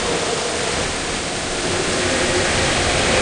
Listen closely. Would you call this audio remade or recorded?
recorded